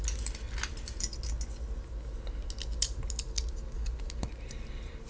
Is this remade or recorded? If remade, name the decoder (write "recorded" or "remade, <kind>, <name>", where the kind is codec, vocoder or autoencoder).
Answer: recorded